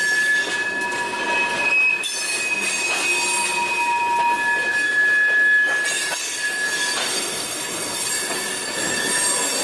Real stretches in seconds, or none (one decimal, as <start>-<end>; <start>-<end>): 0.0-7.1; 8.1-9.6

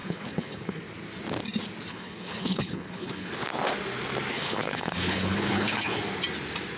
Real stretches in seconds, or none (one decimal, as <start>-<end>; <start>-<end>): 0.8-1.9; 3.3-4.3; 6.0-6.8

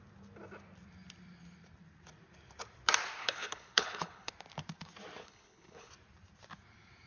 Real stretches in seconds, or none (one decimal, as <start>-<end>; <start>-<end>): 0.0-3.2; 4.3-5.2; 5.9-7.1

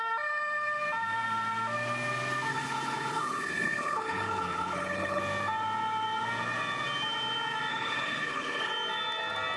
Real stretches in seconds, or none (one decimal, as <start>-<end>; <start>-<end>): 0.0-2.5; 5.2-7.7; 8.7-9.6

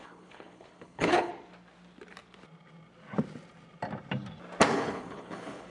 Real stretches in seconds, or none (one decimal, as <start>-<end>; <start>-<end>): 1.3-4.7